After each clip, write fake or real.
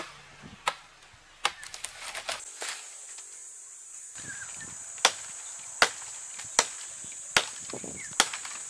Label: real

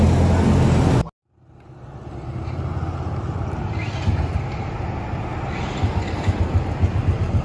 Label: real